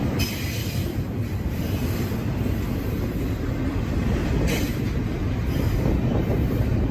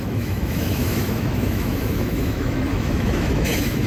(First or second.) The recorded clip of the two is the first